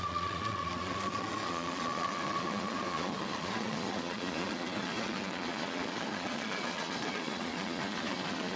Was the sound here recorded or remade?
remade